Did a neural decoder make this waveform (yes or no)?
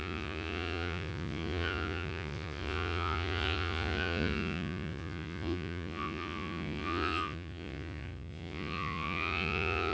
yes